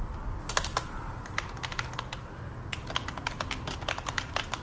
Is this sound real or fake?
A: real